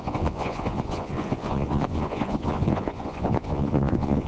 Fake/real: fake